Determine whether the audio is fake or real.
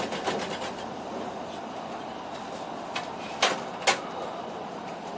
real